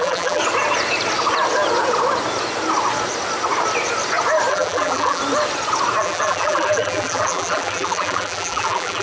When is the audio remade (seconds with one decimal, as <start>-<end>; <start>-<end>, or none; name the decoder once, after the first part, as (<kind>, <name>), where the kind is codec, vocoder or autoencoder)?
0.0-0.4 (vocoder, BigVGAN v2); 4.5-5.2; 6.0-9.0